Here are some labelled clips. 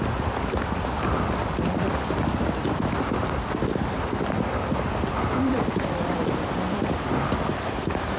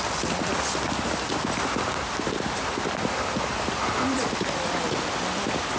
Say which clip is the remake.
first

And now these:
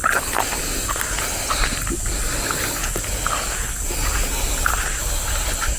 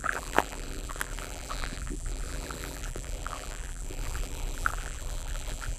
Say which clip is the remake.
second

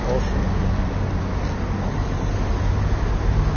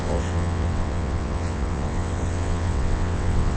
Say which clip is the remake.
second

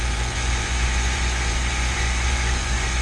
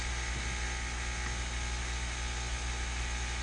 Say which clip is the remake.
first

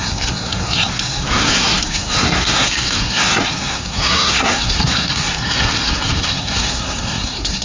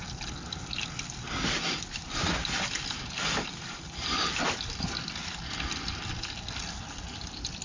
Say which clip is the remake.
first